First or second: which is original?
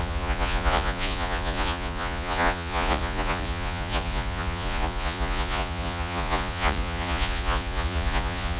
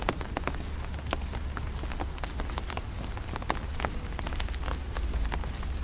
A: second